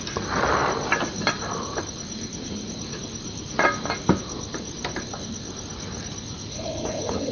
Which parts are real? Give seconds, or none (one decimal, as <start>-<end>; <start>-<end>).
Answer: 0.0-6.5